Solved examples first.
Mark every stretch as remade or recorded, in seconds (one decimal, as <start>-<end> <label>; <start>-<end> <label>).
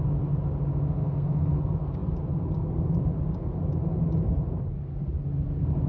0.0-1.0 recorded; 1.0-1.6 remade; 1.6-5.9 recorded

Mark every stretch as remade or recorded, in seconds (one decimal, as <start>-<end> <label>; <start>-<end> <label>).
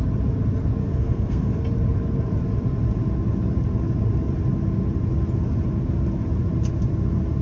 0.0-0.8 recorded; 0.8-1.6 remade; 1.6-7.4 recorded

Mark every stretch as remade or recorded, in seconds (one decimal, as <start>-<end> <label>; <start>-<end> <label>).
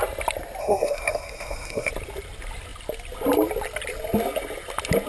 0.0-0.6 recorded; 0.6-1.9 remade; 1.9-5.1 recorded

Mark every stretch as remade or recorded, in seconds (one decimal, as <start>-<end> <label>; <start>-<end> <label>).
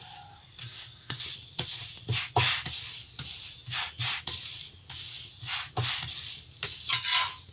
0.0-0.6 recorded; 0.6-1.2 remade; 1.2-7.5 recorded